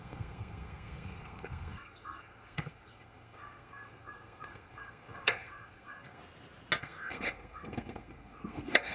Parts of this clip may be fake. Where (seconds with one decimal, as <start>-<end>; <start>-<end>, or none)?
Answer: 0.0-6.2; 6.8-8.9

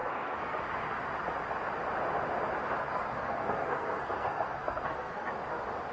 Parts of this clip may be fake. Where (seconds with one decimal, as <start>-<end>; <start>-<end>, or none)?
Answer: 0.0-0.6; 2.8-5.3

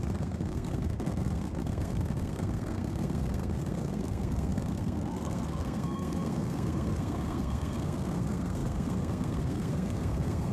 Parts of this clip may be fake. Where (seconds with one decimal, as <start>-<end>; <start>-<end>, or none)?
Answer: 0.0-10.5

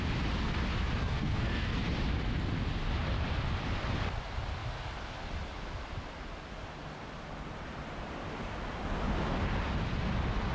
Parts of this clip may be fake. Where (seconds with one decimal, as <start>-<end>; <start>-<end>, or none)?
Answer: 1.0-1.8

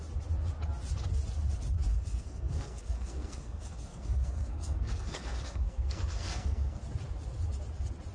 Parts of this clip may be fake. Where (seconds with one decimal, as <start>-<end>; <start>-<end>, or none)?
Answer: 1.9-6.8

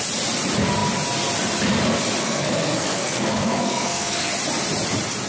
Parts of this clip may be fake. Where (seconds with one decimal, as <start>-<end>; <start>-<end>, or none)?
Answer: 2.2-4.3

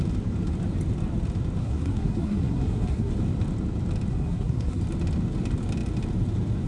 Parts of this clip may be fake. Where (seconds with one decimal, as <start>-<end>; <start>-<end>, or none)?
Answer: 1.6-3.1; 4.1-4.8